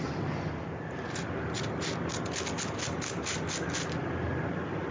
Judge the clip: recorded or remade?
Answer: recorded